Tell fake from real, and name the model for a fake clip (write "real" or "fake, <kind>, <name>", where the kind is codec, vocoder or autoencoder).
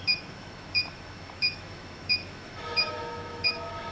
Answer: fake, autoencoder, DAC-VAE